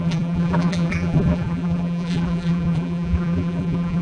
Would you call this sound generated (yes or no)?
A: yes